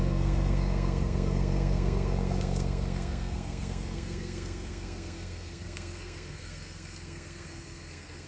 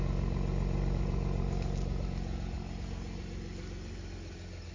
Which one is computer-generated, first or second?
first